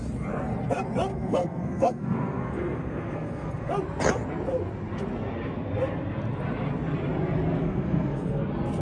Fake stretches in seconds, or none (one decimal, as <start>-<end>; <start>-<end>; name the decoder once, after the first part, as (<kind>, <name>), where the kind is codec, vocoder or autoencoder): 1.1-3.7 (codec, SNAC); 7.6-8.4